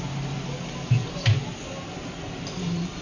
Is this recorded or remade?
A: recorded